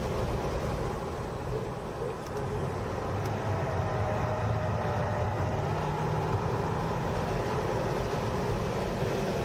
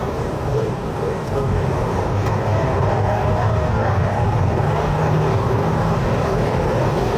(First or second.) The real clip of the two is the first